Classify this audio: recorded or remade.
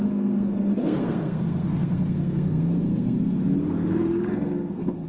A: remade